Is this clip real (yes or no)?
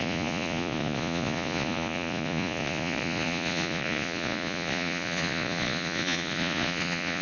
no